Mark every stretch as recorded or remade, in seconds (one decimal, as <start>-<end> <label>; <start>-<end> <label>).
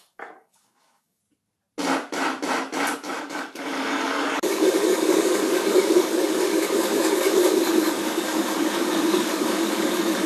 0.0-1.2 remade; 1.2-3.2 recorded; 3.2-10.3 remade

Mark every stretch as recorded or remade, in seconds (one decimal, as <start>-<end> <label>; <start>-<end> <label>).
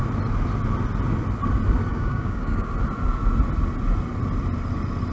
0.0-1.9 recorded; 1.9-2.7 remade; 2.7-5.1 recorded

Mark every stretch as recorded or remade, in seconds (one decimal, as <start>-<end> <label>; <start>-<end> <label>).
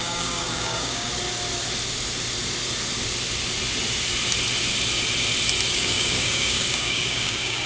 0.0-1.1 remade; 1.1-5.7 recorded; 5.7-7.7 remade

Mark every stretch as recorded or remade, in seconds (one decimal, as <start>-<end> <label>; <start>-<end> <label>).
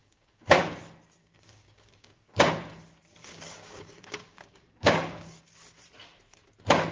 0.0-0.6 remade; 0.6-1.2 recorded; 1.2-2.5 remade; 2.5-3.2 recorded; 3.2-5.4 remade; 5.4-6.9 recorded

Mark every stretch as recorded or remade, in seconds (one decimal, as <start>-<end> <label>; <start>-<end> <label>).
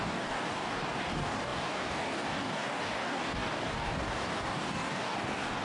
0.0-5.6 remade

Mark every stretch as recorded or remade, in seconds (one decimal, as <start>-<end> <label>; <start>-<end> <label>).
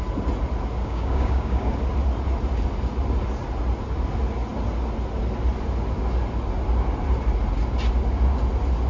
0.0-0.8 recorded; 0.8-1.7 remade; 1.7-8.9 recorded